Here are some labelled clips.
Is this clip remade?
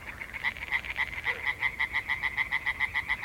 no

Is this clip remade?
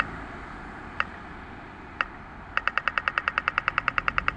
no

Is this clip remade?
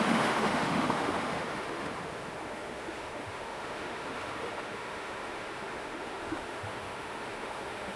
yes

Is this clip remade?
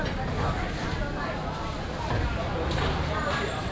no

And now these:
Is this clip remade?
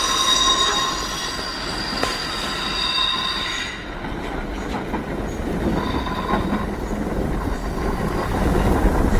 no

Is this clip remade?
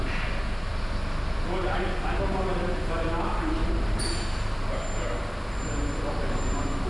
no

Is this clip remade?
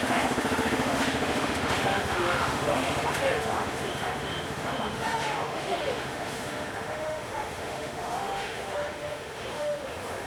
yes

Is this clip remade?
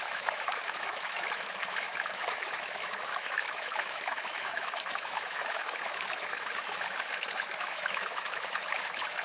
yes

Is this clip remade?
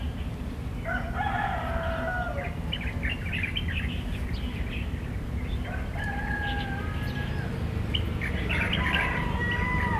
no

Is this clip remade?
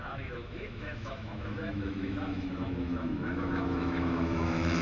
yes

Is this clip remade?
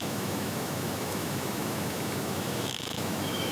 yes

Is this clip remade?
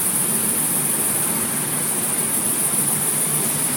no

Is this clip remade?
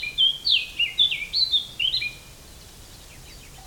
no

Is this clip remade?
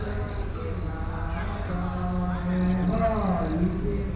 no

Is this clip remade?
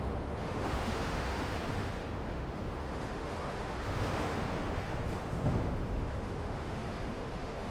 yes